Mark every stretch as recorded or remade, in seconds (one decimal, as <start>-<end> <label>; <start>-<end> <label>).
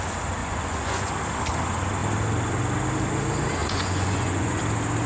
0.0-0.4 recorded; 0.4-1.1 remade; 1.1-3.6 recorded; 3.6-4.6 remade; 4.6-5.1 recorded